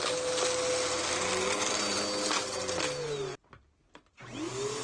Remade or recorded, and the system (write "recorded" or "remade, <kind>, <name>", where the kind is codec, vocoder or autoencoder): recorded